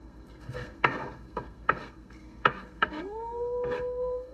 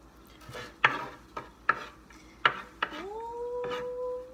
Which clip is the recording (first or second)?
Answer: second